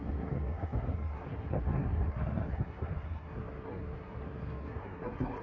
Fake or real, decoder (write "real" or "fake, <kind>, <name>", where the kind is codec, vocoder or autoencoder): fake, codec, SNAC